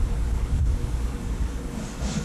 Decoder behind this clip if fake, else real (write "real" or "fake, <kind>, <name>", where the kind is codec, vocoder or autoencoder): fake, codec, DAC